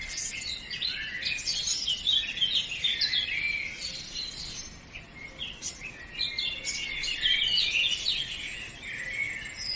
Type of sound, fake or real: real